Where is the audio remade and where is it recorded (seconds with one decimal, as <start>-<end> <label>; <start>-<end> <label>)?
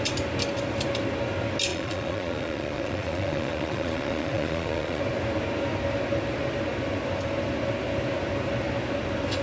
0.0-1.7 recorded; 1.7-5.0 remade; 5.0-9.4 recorded